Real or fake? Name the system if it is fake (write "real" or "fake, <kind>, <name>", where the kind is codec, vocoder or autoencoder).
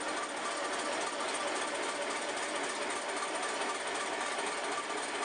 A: real